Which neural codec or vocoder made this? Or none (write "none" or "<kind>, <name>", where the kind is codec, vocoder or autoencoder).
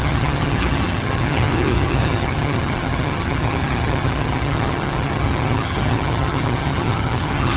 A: vocoder, HiFi-GAN